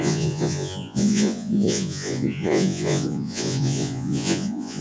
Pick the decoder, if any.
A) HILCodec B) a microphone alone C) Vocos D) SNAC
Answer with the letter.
C